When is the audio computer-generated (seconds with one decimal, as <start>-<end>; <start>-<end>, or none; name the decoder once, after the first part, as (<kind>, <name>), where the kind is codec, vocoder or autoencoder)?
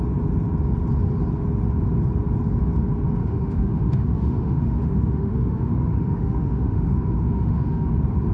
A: 3.2-7.9 (autoencoder, DAC-VAE)